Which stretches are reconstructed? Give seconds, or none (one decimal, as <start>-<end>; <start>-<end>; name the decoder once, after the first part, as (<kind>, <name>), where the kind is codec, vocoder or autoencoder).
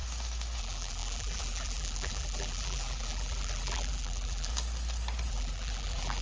0.6-4.5 (vocoder, BigVGAN v2); 5.3-6.2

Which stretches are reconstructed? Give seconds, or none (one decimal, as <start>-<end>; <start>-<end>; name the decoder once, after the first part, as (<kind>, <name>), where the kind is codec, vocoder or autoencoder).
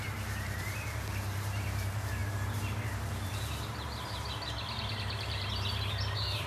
0.0-6.5 (vocoder, BigVGAN v2)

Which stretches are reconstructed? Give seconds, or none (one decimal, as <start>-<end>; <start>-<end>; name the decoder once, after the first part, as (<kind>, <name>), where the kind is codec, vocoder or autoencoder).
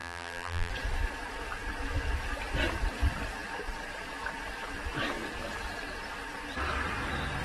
0.0-0.7 (vocoder, BigVGAN v2)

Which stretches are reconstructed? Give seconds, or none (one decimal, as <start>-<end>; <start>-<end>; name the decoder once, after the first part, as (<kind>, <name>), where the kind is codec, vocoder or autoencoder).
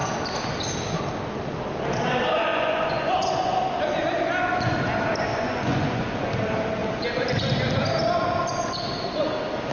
2.5-3.6 (vocoder, Vocos); 5.3-6.3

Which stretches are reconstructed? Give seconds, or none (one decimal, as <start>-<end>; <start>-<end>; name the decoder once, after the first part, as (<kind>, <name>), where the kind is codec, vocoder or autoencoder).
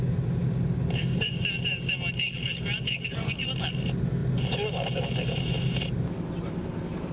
none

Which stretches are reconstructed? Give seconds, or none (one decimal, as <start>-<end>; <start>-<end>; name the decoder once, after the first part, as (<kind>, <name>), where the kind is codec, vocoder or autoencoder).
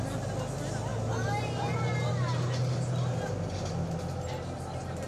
none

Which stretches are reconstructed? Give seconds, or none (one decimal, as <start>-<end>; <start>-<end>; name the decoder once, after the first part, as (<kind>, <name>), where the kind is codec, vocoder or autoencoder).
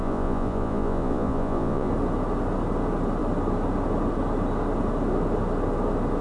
0.0-1.9 (vocoder, Vocos)